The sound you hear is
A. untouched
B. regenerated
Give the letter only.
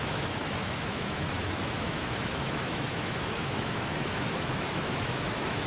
B